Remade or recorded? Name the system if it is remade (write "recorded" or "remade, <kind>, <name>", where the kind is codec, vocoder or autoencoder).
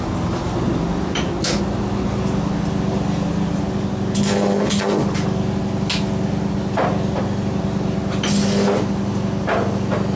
recorded